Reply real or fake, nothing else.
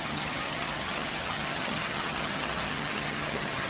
fake